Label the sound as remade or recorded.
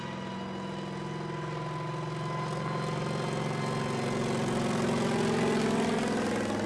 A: recorded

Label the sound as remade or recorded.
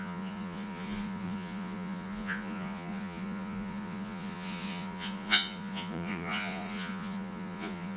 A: remade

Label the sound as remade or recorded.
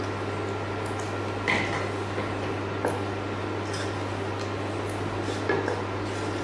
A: recorded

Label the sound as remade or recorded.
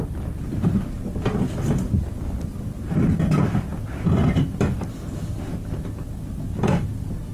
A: recorded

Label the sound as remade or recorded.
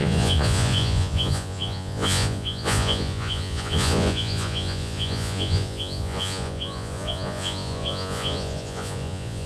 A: remade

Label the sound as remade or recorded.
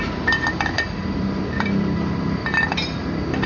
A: remade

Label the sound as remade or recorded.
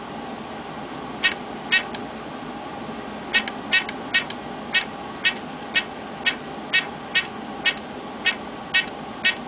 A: recorded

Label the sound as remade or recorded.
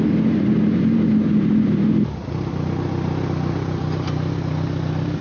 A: recorded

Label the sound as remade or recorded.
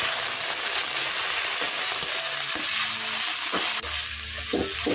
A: recorded